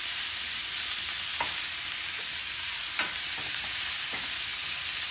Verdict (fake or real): real